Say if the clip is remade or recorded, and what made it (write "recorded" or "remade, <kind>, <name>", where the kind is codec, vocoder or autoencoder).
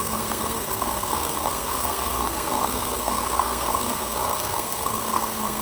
remade, codec, SNAC